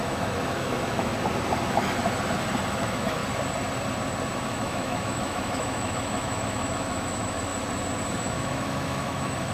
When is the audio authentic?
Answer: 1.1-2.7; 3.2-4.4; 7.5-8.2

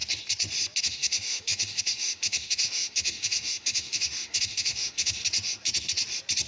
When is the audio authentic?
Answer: 0.0-0.8; 5.2-6.5